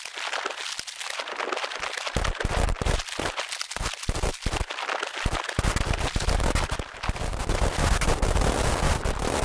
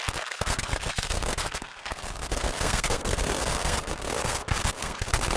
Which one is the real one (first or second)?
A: first